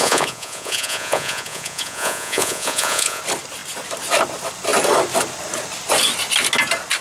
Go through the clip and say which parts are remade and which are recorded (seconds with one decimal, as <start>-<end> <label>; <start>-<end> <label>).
0.0-3.2 remade; 3.2-7.0 recorded